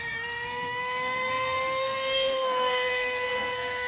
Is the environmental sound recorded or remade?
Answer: remade